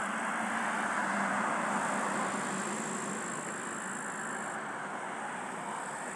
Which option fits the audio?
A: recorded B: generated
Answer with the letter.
A